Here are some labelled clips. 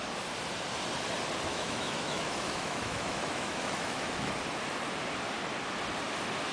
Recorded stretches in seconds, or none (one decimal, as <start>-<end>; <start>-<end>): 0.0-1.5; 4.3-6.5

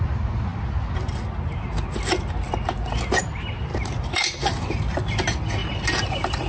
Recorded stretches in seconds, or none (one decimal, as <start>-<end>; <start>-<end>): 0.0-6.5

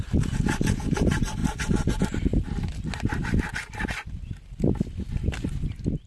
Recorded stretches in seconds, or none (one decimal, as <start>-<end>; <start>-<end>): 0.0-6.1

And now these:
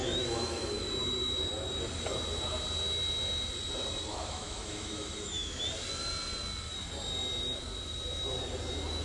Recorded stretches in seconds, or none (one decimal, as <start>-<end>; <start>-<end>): 0.8-4.1; 5.6-9.0

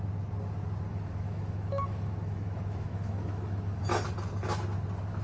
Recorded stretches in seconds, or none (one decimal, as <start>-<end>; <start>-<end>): 0.0-0.9; 3.8-5.2

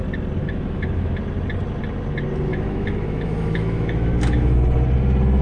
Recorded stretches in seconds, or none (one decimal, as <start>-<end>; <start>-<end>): 0.0-0.4; 1.2-2.5; 4.6-5.4